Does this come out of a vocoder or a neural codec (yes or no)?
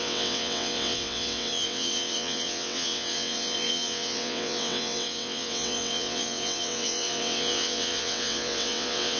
yes